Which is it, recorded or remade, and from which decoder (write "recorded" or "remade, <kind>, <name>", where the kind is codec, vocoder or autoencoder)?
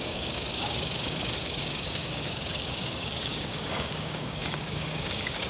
remade, codec, DAC